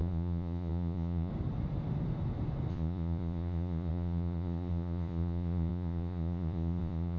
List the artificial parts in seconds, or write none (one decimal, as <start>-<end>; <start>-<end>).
0.0-1.3; 2.7-7.2